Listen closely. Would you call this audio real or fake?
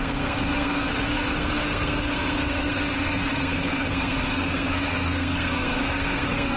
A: fake